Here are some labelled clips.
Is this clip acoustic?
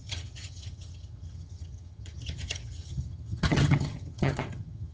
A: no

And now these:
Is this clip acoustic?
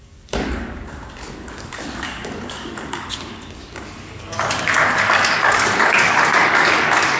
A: no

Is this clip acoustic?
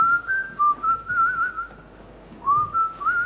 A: no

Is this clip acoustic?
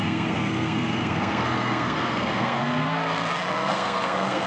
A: no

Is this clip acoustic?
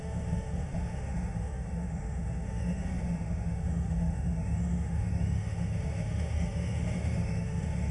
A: no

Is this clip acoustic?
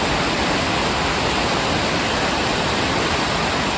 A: yes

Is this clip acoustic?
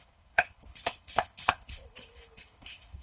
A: no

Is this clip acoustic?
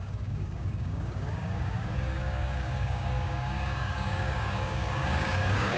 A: no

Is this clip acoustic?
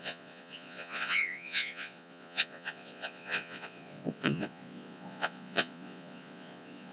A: no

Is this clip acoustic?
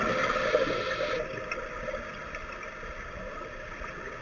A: yes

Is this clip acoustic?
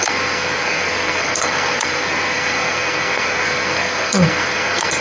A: no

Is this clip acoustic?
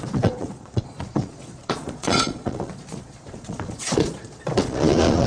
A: no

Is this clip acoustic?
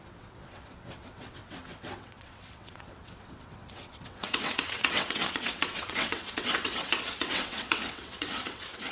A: no